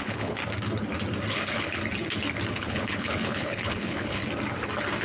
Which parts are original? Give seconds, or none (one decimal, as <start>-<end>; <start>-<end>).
0.4-1.3; 1.8-2.5; 4.2-5.0